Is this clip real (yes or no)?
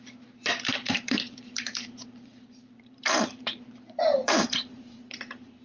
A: no